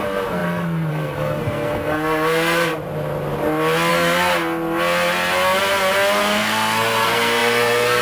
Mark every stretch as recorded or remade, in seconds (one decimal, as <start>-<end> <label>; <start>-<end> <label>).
0.0-2.7 remade; 2.7-3.9 recorded; 3.9-4.3 remade; 4.3-6.2 recorded; 6.2-8.0 remade